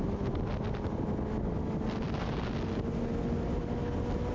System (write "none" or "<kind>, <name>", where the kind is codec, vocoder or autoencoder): none